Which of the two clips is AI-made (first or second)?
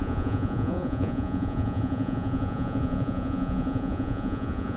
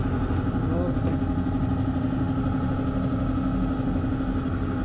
first